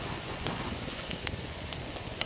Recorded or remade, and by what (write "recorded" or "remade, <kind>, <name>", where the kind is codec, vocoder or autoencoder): remade, vocoder, Vocos